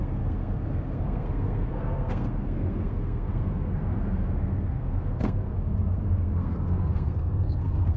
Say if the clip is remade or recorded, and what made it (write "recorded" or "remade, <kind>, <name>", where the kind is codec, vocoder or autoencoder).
remade, codec, SNAC